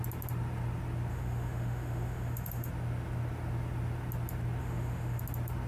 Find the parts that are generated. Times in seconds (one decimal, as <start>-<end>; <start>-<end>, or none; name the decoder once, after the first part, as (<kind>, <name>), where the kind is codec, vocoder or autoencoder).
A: 1.1-2.7 (autoencoder, DAC-VAE); 4.6-5.2